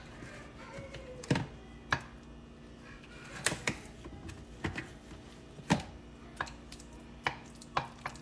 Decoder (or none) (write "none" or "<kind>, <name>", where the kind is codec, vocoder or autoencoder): none